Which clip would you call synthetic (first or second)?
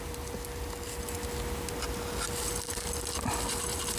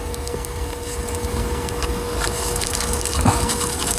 second